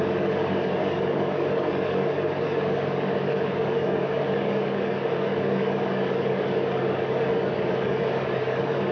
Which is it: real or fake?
fake